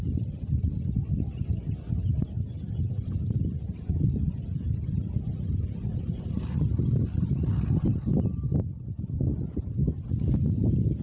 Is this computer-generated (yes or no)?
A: no